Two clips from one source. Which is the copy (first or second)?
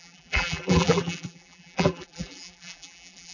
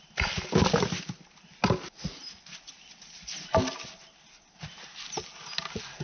first